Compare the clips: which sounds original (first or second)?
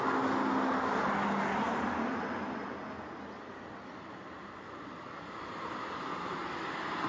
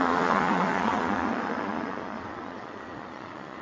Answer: first